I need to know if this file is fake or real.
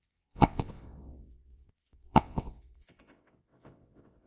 fake